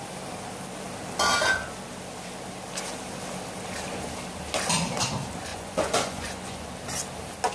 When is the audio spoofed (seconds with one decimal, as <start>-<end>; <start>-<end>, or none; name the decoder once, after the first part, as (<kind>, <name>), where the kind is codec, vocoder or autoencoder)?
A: 5.5-6.7 (vocoder, Vocos)